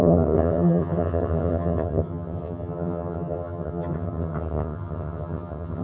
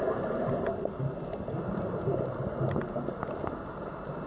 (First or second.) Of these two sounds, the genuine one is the second